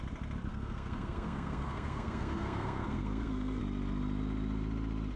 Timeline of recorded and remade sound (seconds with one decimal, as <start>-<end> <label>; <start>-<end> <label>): 0.0-0.5 recorded; 0.5-3.6 remade; 3.6-5.2 recorded